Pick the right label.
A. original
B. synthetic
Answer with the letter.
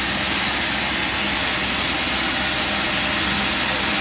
A